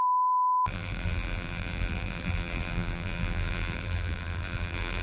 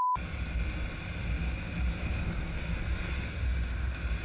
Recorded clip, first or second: second